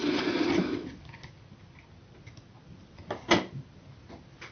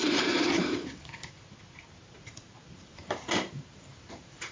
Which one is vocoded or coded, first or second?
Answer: second